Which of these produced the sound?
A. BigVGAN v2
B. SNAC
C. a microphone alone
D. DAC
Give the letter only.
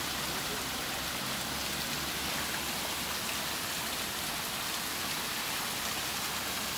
C